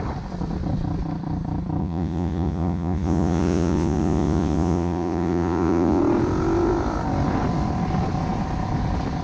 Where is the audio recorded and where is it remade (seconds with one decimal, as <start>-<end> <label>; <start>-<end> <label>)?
0.0-1.8 recorded; 1.8-6.0 remade; 6.0-9.2 recorded

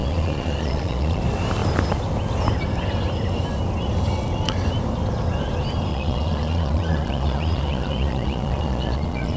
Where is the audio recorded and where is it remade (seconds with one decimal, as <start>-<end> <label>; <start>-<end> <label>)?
0.0-1.2 remade; 1.2-5.9 recorded; 5.9-9.4 remade

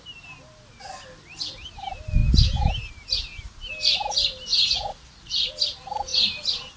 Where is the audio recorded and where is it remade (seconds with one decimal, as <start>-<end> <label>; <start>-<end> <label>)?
0.0-4.5 recorded; 4.5-5.5 remade; 5.5-6.8 recorded

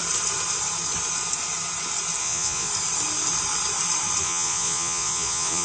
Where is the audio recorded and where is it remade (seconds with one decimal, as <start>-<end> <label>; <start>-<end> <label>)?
0.0-2.2 recorded; 2.2-2.7 remade; 2.7-4.2 recorded; 4.2-5.6 remade

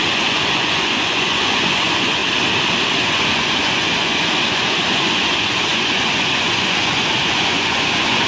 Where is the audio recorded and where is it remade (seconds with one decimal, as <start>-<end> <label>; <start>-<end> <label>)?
0.0-2.2 remade; 2.2-3.0 recorded; 3.0-8.3 remade